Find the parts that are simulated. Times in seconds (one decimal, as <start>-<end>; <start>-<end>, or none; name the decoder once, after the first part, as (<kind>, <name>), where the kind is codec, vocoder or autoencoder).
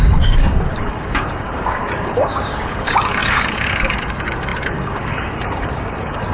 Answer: 0.0-6.3 (codec, DAC)